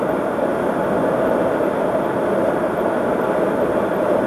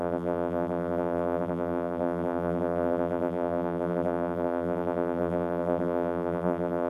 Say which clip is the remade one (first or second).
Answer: second